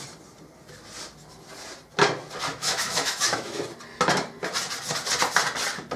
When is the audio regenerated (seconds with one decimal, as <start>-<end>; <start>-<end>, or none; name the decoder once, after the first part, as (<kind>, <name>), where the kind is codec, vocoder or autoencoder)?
2.5-3.6 (autoencoder, DAC-VAE)